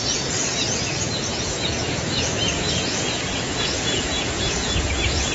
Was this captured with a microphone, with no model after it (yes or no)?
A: no